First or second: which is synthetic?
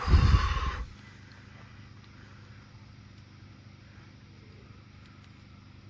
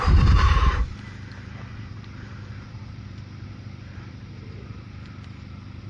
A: second